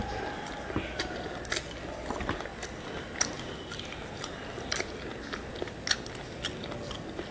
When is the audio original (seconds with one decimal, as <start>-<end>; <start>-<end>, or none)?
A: 0.0-7.3